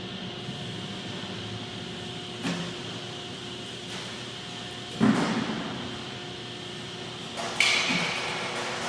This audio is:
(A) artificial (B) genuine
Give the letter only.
B